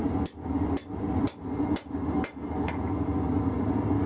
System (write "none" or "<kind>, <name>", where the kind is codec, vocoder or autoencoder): none